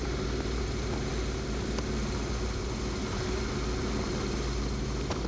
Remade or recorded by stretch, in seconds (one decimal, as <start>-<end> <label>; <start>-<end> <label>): 0.0-5.3 recorded